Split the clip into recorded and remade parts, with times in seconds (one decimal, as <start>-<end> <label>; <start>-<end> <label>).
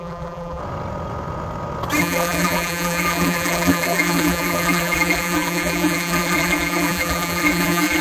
0.0-0.6 remade; 0.6-2.0 recorded; 2.0-8.0 remade